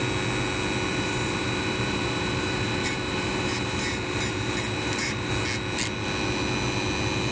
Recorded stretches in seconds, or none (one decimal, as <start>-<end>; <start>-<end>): 0.0-0.9; 5.3-7.3